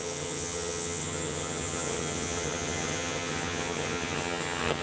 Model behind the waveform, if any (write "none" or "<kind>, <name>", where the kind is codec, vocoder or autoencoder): vocoder, HiFi-GAN